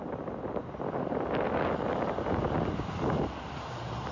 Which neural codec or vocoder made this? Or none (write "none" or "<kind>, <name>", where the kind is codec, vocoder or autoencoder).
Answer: none